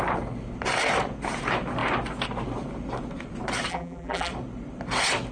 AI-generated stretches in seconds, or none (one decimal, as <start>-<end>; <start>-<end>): 3.7-4.3